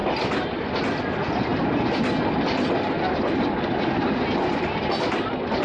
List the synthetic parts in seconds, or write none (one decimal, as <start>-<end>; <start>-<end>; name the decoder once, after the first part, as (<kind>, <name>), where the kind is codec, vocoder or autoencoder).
none